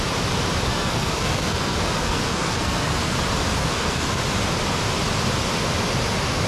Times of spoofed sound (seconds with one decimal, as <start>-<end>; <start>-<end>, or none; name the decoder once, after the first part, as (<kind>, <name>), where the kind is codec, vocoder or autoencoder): 0.7-3.2 (codec, SNAC); 3.6-4.2